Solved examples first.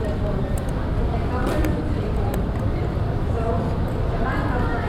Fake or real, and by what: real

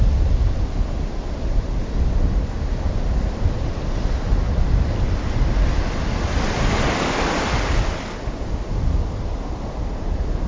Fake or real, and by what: real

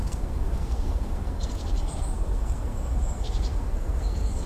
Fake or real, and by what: fake, codec, SNAC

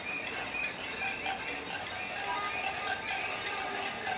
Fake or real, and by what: real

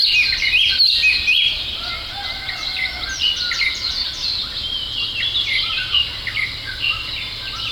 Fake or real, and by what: real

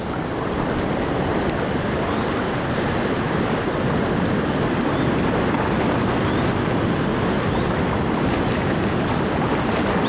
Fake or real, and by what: real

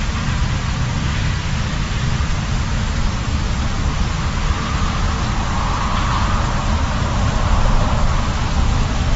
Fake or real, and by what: fake, vocoder, BigVGAN v2